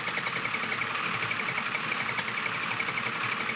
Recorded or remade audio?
recorded